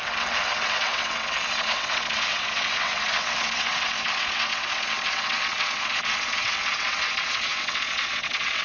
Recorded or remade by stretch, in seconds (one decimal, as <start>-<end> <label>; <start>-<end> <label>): 0.0-8.6 remade